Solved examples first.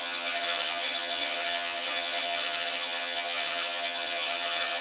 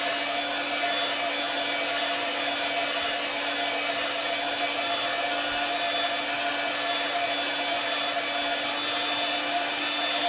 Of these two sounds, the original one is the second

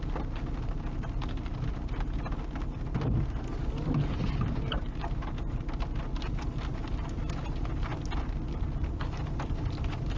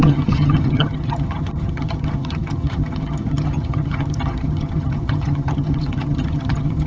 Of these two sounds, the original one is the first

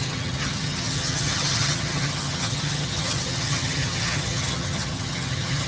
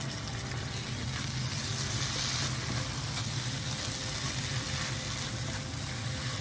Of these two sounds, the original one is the second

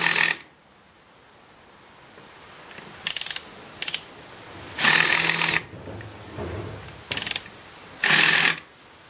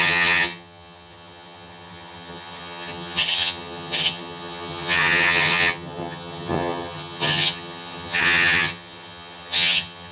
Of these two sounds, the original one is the first